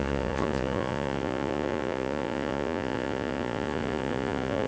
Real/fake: fake